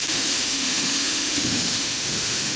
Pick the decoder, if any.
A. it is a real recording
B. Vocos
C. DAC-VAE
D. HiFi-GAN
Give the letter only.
C